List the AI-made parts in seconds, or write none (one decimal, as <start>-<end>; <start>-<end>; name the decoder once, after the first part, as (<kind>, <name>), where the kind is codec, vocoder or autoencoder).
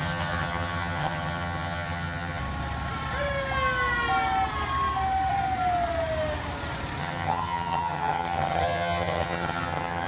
0.0-2.4 (vocoder, HiFi-GAN); 7.0-10.1